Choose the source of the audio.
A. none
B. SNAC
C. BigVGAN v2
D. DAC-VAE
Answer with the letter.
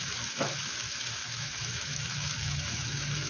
D